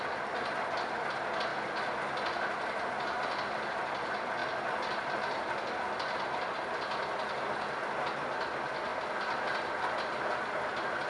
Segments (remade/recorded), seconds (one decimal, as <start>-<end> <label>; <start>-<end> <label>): 0.0-11.1 recorded